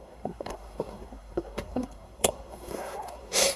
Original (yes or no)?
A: no